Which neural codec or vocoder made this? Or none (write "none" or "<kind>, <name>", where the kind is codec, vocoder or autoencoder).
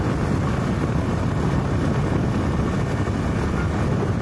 none